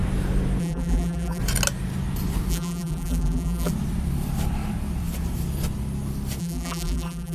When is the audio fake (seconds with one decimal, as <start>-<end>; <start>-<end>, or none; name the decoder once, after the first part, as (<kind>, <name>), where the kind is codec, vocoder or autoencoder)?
0.6-1.4 (vocoder, BigVGAN v2); 2.5-3.7; 6.4-7.3